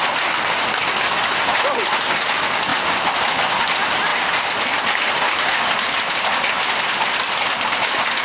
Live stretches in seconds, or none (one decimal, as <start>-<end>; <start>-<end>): 0.0-8.2